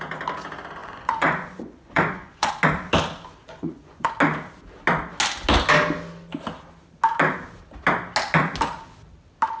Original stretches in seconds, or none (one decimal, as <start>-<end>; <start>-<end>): 0.0-0.8; 2.5-3.4; 4.1-9.6